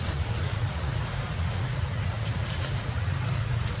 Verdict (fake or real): fake